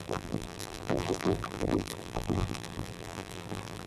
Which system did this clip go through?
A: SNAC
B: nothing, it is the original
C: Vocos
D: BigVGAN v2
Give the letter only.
D